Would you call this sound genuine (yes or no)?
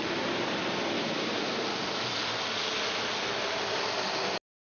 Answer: yes